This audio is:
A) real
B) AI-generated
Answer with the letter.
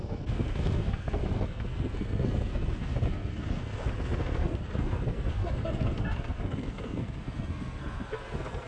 B